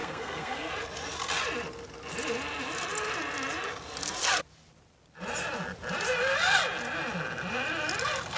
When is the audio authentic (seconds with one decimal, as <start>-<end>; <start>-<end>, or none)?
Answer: 0.7-8.4

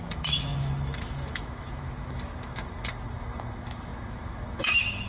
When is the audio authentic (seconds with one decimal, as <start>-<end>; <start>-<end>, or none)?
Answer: none